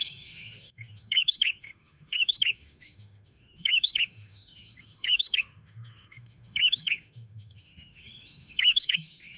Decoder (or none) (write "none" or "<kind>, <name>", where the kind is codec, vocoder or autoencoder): autoencoder, DAC-VAE